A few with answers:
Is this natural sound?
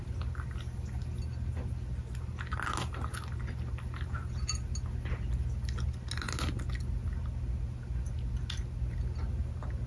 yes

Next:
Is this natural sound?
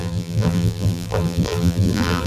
no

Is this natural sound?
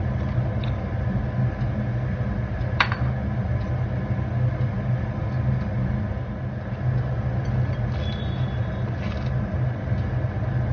yes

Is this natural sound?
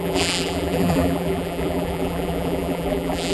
no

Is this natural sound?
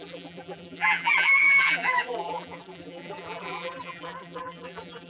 no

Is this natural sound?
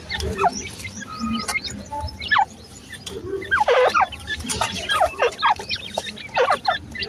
no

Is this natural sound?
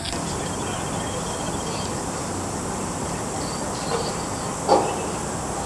yes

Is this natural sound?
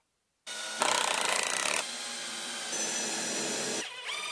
yes